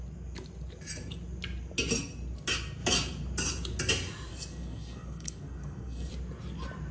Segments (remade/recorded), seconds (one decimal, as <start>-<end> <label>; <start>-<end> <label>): 0.0-4.3 recorded; 4.3-6.1 remade; 6.1-6.9 recorded